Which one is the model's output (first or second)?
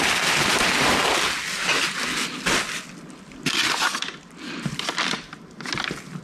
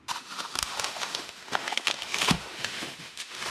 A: second